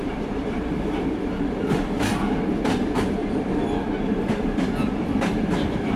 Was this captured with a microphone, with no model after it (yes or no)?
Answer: no